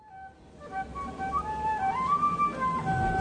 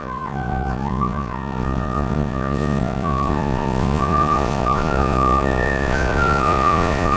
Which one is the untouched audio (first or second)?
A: first